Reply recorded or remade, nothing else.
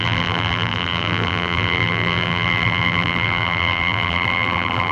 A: remade